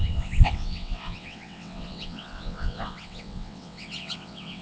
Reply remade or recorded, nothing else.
remade